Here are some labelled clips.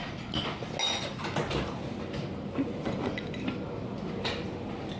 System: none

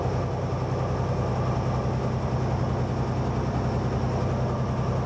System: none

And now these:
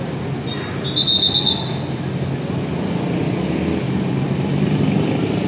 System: none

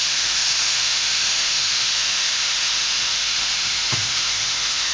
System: autoencoder, DAC-VAE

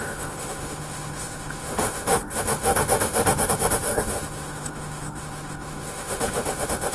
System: autoencoder, DAC-VAE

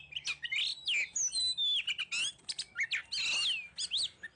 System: none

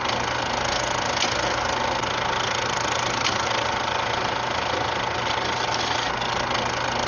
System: none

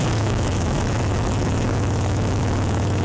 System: autoencoder, DAC-VAE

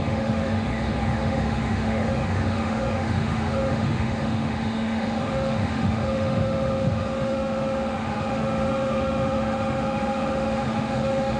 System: autoencoder, DAC-VAE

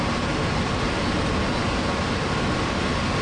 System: none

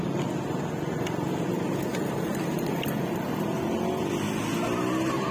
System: none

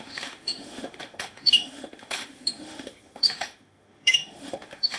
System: autoencoder, DAC-VAE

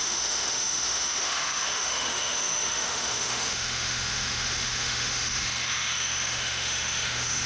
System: autoencoder, DAC-VAE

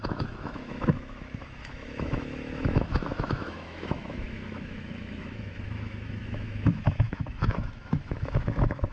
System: autoencoder, DAC-VAE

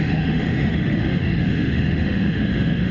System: autoencoder, DAC-VAE